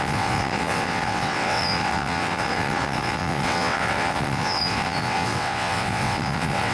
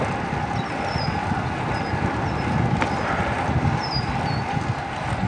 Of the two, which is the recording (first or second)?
second